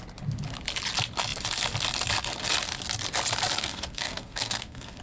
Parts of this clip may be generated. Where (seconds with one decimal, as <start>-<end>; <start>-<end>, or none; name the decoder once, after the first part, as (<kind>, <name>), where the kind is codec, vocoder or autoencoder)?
3.6-5.0 (codec, SNAC)